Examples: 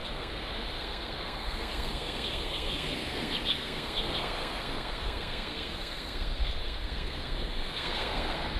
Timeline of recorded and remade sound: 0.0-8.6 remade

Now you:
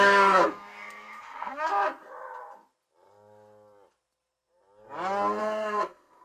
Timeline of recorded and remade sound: 0.0-1.7 remade; 1.7-5.4 recorded; 5.4-6.2 remade

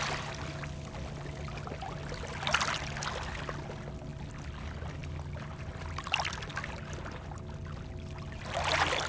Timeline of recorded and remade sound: 0.0-9.1 recorded

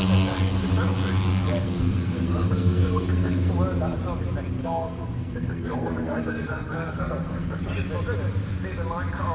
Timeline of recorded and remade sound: 0.0-1.3 recorded; 1.3-3.5 remade; 3.5-4.6 recorded; 4.6-7.6 remade; 7.6-9.3 recorded

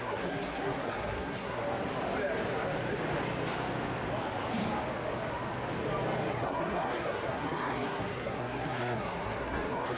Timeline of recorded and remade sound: 0.0-1.6 remade; 1.6-6.3 recorded; 6.3-10.0 remade

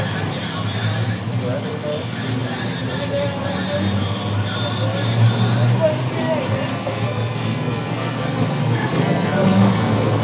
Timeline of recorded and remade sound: 0.0-6.7 recorded; 6.7-10.2 remade

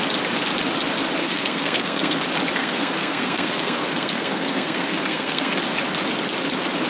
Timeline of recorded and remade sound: 0.0-1.2 recorded; 1.2-2.2 remade; 2.2-2.6 recorded; 2.6-5.5 remade; 5.5-6.9 recorded